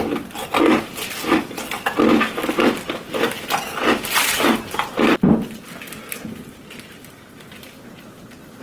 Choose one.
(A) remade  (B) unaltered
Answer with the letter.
B